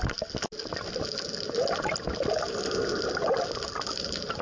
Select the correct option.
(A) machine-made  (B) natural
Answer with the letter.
B